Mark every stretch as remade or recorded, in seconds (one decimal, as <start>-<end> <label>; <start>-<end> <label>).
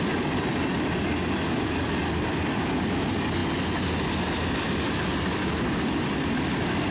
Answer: 0.0-6.9 recorded